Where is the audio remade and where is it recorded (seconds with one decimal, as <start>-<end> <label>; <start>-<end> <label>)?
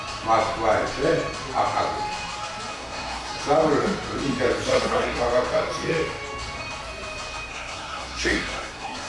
0.0-2.7 recorded; 2.7-3.3 remade; 3.3-4.7 recorded; 4.7-5.2 remade; 5.2-7.5 recorded; 7.5-9.1 remade